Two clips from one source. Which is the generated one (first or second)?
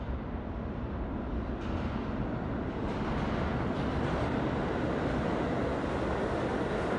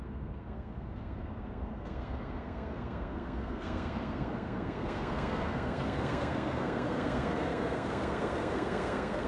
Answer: second